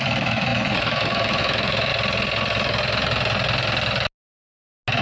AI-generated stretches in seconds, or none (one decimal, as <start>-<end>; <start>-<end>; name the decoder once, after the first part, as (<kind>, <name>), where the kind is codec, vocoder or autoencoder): 0.0-1.9 (autoencoder, DAC-VAE)

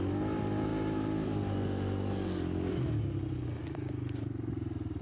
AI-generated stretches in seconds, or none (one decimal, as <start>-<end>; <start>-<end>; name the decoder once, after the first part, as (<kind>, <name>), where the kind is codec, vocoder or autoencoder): none

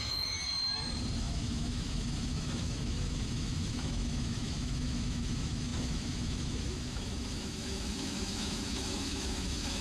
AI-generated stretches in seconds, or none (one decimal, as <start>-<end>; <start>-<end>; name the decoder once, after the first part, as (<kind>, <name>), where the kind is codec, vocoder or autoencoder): 0.0-0.4 (autoencoder, DAC-VAE); 1.2-9.8

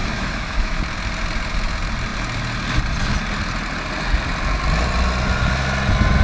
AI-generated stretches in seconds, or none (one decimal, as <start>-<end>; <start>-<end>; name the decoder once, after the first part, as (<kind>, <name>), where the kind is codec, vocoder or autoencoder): 0.0-0.8 (autoencoder, DAC-VAE)

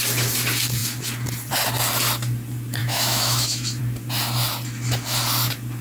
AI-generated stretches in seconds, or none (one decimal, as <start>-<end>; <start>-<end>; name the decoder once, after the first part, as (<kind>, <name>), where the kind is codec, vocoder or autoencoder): 2.8-3.8 (autoencoder, DAC-VAE)

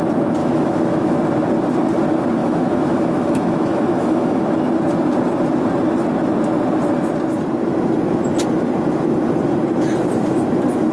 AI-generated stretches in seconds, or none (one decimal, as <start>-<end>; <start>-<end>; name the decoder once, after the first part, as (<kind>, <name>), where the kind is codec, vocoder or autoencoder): 0.4-1.2 (autoencoder, DAC-VAE); 2.4-4.4

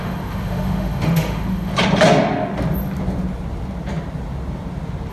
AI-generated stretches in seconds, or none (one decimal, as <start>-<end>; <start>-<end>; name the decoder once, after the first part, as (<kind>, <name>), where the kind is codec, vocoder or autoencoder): 0.0-1.7 (autoencoder, DAC-VAE)

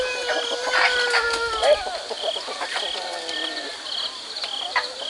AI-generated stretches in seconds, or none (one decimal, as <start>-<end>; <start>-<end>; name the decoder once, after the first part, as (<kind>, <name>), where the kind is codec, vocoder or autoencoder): none